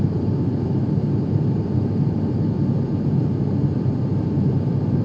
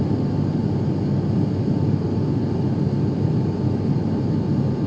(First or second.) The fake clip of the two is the first